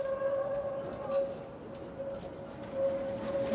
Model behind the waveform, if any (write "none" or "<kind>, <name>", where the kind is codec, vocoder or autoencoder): none